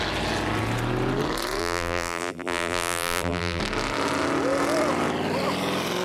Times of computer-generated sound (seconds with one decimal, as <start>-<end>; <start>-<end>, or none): 1.6-3.6